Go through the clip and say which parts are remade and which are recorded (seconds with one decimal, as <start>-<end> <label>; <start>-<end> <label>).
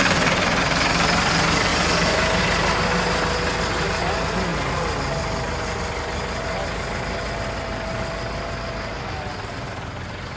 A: 0.0-10.4 recorded